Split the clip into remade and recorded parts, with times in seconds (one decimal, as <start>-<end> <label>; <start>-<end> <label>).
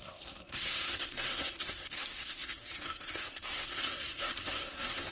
0.0-5.1 remade